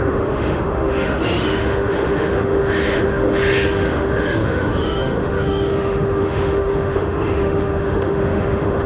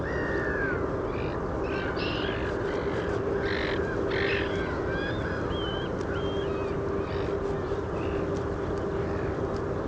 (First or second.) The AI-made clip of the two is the first